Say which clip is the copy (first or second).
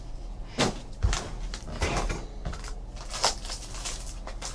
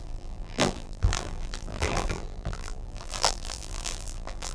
second